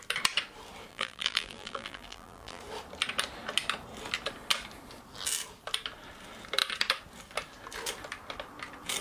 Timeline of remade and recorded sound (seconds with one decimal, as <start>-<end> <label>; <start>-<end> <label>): 0.0-0.9 recorded; 0.9-2.6 remade; 2.6-9.0 recorded